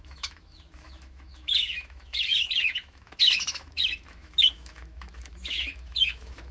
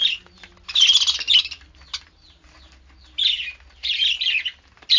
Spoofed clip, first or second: first